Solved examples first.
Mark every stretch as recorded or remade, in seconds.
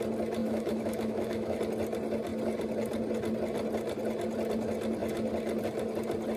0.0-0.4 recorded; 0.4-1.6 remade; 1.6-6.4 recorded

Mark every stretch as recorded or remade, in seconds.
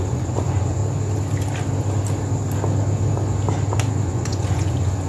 0.0-0.8 remade; 0.8-3.9 recorded; 3.9-5.1 remade